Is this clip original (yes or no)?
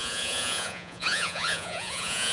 no